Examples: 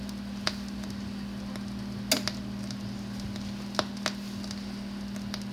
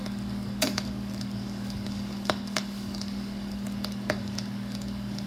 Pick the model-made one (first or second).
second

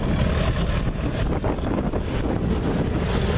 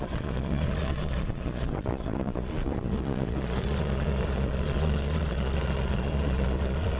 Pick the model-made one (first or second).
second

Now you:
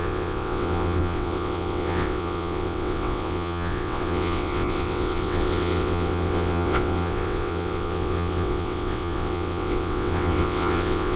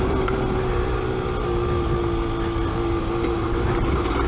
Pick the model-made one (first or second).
first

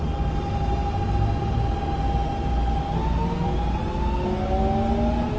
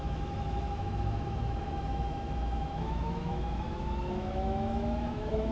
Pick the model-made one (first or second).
second